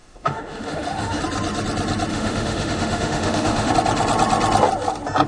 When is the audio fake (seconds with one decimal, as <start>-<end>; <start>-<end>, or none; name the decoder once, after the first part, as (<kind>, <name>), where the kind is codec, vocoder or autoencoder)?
0.0-1.2 (autoencoder, DAC-VAE); 2.1-3.7